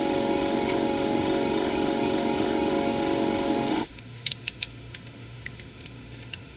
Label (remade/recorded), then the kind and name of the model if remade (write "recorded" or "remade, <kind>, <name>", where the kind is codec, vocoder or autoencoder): remade, autoencoder, DAC-VAE